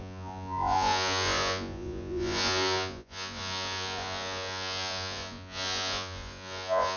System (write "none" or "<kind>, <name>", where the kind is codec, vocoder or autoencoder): vocoder, Vocos